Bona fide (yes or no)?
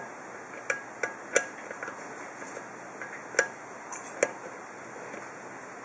yes